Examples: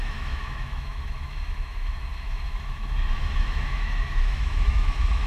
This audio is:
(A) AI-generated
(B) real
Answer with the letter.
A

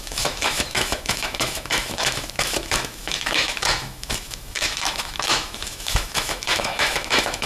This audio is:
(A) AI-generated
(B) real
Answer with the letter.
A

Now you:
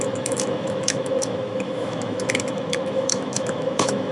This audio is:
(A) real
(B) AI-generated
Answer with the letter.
B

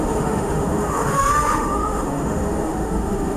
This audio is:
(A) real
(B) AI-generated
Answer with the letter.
B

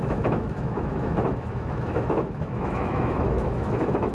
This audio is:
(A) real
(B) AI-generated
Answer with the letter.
B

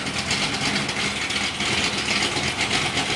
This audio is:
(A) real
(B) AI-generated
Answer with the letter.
A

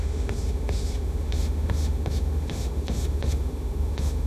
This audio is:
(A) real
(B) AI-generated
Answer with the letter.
B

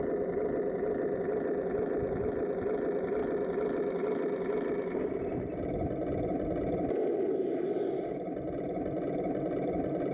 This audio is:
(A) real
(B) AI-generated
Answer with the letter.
A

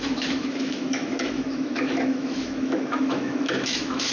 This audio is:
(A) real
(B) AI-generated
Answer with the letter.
B